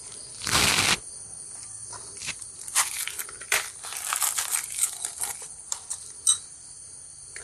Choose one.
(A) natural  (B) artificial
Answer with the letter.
B